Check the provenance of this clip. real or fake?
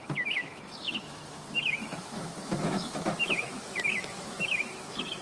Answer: fake